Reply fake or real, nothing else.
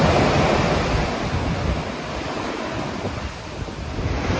real